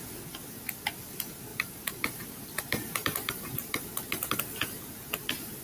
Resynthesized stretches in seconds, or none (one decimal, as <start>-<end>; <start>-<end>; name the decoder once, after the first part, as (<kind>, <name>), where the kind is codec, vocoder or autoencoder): 1.5-3.8 (vocoder, BigVGAN v2)